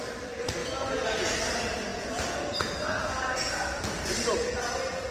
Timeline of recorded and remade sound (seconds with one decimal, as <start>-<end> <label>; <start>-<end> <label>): 0.0-0.6 recorded; 0.6-1.4 remade; 1.4-1.9 recorded; 1.9-3.5 remade; 3.5-5.1 recorded